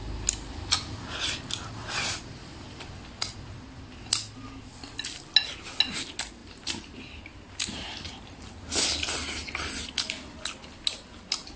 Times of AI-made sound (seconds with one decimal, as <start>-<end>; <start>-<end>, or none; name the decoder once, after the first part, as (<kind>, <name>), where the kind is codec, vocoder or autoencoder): none